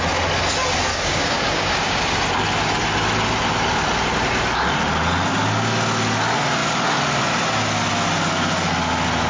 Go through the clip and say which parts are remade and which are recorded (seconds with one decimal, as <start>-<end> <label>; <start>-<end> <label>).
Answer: 0.0-0.9 recorded; 0.9-2.0 remade; 2.0-9.3 recorded